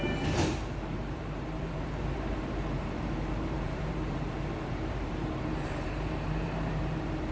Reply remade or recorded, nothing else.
remade